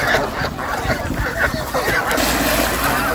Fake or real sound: real